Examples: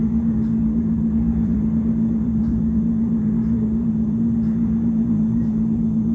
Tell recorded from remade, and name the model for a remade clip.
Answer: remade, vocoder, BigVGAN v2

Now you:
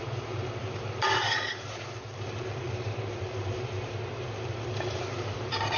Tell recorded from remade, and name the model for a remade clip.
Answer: remade, vocoder, BigVGAN v2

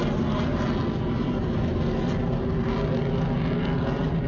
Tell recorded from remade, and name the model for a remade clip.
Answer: recorded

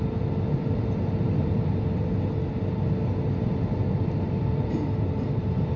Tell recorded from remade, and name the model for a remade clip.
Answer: recorded